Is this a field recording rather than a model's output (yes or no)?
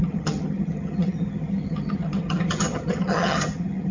no